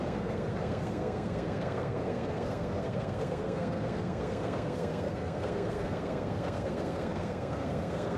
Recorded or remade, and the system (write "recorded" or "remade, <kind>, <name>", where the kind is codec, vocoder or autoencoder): remade, codec, SNAC